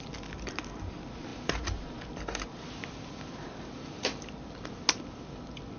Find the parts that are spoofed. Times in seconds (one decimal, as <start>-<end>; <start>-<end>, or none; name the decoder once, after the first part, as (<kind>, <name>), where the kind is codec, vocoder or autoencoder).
none